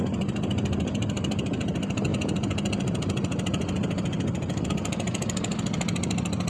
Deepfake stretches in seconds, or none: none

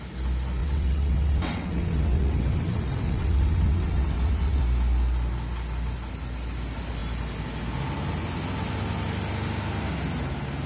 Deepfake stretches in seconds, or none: 0.6-4.6 (vocoder, WaveNeXt)

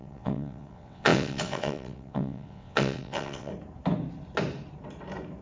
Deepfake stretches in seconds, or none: 0.0-3.5 (vocoder, WaveNeXt)

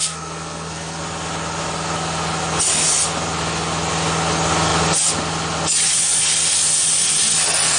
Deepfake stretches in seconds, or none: 0.0-1.0 (codec, SNAC)

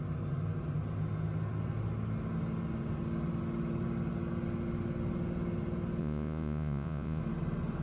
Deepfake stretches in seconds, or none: 6.0-7.2 (vocoder, Vocos)

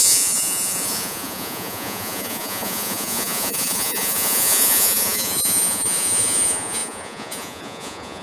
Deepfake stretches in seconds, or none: 0.0-8.2 (vocoder, Vocos)

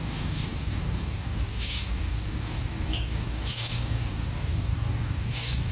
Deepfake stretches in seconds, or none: 0.0-5.7 (codec, DAC)